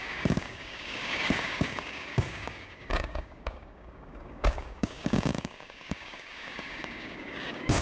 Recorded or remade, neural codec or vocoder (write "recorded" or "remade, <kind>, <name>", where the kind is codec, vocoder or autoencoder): remade, codec, DAC